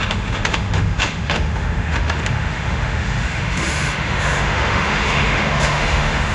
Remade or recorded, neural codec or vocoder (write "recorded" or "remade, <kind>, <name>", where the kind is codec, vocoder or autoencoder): remade, autoencoder, DAC-VAE